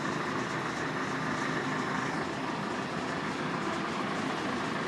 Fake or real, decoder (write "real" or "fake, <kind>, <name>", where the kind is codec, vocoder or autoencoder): real